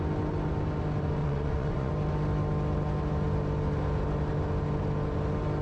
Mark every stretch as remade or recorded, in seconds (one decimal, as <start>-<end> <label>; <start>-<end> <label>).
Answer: 0.0-1.2 recorded; 1.2-1.9 remade; 1.9-5.6 recorded